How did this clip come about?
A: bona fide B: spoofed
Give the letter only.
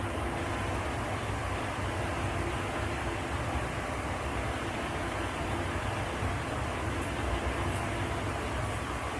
A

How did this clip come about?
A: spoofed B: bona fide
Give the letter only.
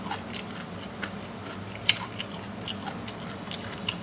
B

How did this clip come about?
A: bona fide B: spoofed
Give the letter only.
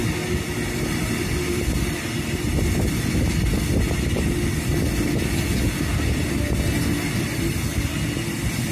A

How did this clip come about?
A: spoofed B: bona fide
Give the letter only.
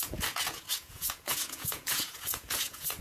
A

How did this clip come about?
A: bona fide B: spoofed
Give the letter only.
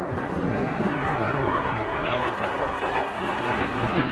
B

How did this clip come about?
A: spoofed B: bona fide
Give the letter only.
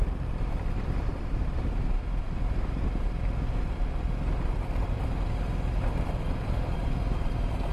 B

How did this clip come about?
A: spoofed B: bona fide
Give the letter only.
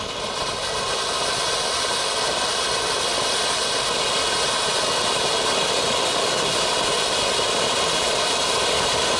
B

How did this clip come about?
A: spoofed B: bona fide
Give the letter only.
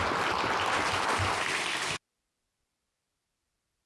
B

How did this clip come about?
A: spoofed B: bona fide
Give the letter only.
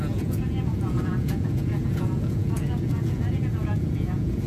A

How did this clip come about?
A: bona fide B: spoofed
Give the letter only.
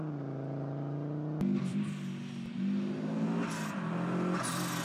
A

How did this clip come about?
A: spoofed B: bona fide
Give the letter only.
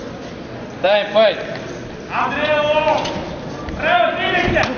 B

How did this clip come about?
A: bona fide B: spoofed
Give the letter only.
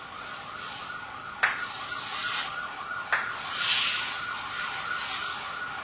A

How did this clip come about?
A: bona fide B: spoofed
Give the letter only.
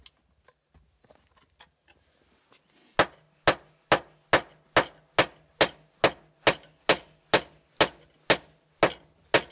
A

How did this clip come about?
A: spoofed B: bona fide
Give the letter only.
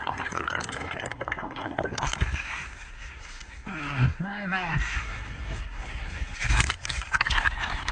A